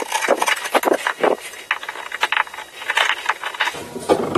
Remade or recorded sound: recorded